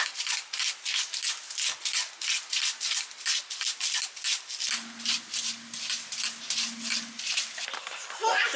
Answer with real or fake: real